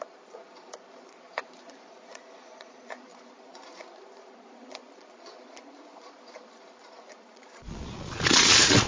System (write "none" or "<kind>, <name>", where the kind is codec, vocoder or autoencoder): vocoder, Vocos